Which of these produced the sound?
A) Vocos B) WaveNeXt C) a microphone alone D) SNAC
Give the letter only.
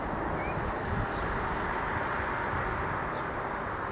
C